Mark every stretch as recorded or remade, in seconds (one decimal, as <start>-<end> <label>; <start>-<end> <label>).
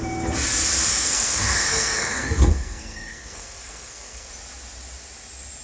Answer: 0.0-0.9 recorded; 0.9-4.3 remade; 4.3-5.6 recorded